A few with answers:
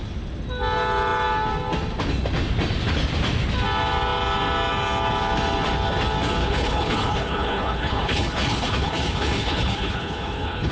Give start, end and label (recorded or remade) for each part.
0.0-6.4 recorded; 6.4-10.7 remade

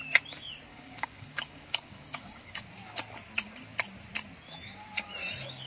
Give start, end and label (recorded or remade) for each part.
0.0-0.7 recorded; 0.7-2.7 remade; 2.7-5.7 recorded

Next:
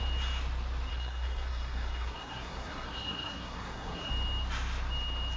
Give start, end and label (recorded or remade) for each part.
0.0-0.9 recorded; 0.9-4.1 remade; 4.1-5.4 recorded

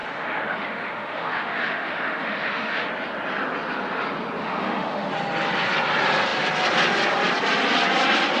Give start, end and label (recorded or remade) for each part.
0.0-2.9 remade; 2.9-4.4 recorded; 4.4-5.1 remade; 5.1-8.4 recorded

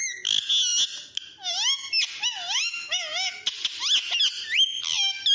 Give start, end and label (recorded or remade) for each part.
0.0-5.3 recorded